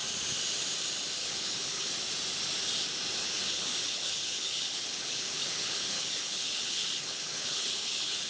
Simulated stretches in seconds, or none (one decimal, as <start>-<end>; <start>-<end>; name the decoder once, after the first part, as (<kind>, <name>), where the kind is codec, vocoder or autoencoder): 1.2-1.9 (codec, HILCodec); 3.2-8.3